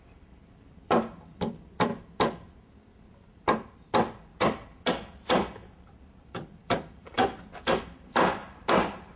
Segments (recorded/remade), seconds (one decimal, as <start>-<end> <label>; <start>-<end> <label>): 0.0-1.9 remade; 1.9-4.9 recorded; 4.9-8.4 remade; 8.4-9.2 recorded